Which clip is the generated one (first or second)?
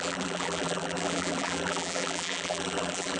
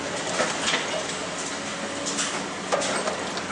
first